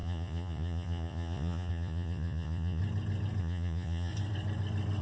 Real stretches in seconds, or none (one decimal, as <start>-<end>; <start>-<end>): 2.8-3.4; 4.1-5.0